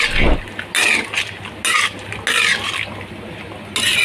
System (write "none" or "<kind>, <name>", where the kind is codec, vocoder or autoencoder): none